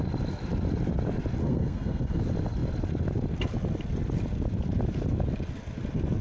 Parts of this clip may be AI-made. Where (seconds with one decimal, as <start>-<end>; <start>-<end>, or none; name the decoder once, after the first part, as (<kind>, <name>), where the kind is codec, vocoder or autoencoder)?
1.4-2.2 (codec, SNAC)